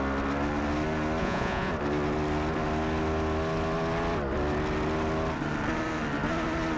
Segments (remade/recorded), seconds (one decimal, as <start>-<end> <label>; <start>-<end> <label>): 0.0-1.2 recorded; 1.2-1.7 remade; 1.7-6.8 recorded